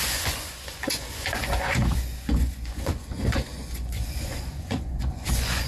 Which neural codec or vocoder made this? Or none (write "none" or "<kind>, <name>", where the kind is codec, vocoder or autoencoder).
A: vocoder, Vocos